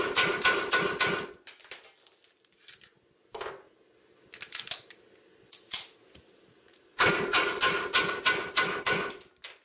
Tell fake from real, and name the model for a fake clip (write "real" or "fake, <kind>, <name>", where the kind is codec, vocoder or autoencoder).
real